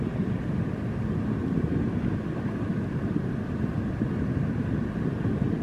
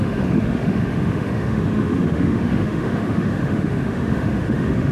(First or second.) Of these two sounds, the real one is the first